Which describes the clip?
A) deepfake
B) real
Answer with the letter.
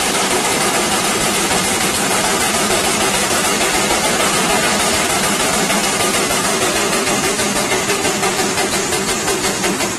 A